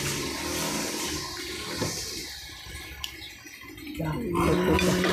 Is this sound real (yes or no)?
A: yes